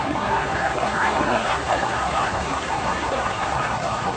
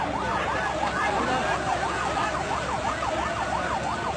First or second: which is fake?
first